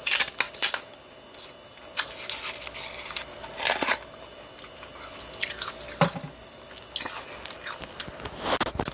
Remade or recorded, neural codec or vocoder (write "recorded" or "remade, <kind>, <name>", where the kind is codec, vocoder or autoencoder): recorded